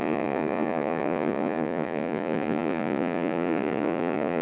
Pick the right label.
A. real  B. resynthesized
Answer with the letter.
B